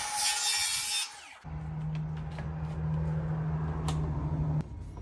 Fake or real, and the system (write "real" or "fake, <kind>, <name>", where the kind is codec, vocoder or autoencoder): real